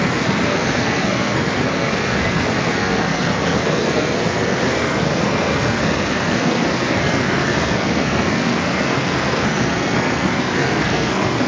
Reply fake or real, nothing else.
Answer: fake